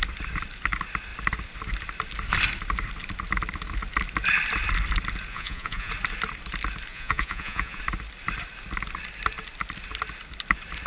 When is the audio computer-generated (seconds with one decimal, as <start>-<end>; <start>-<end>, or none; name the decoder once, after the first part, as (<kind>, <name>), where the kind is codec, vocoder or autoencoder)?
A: 5.3-5.9 (vocoder, Vocos); 6.9-7.8